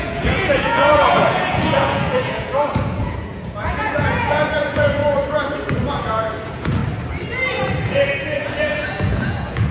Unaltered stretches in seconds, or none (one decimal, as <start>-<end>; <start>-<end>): 5.0-5.9; 6.8-7.8

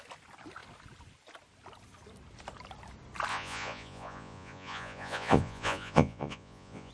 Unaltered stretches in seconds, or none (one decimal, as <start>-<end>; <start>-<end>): 0.0-3.3

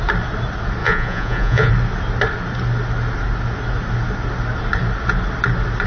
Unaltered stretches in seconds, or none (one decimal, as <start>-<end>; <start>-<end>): 0.0-0.8; 1.7-5.9

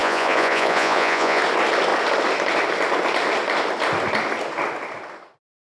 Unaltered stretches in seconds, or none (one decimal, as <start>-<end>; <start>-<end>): 1.4-5.7